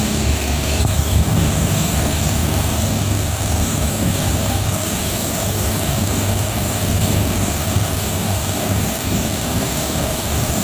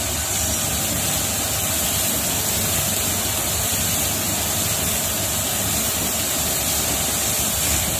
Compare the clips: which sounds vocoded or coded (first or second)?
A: first